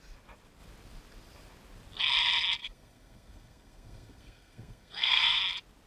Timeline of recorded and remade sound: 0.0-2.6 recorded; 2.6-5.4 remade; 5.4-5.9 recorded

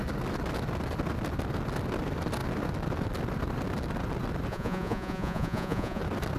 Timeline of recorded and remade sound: 0.0-4.5 recorded; 4.5-6.0 remade; 6.0-6.4 recorded

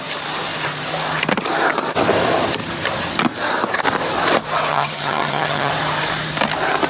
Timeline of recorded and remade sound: 0.0-4.7 recorded; 4.7-5.7 remade; 5.7-6.9 recorded

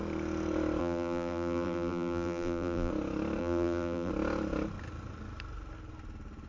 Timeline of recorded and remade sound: 0.0-0.8 recorded; 0.8-2.9 remade; 2.9-3.4 recorded; 3.4-4.1 remade; 4.1-6.5 recorded

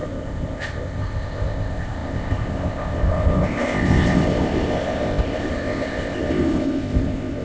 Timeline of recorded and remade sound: 0.0-7.4 remade